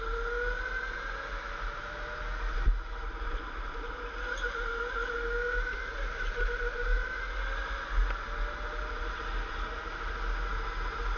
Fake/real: real